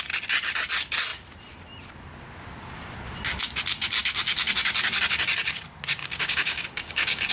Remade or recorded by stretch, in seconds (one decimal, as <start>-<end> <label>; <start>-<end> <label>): 0.0-6.0 recorded; 6.0-7.3 remade